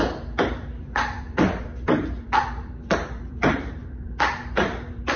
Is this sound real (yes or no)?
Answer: no